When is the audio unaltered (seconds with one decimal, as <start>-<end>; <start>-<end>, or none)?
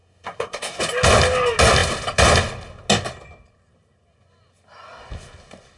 0.8-5.8